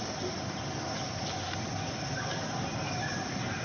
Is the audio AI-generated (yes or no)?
no